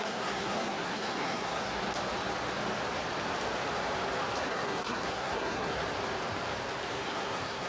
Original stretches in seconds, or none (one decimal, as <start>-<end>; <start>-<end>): 1.8-4.4; 5.8-6.9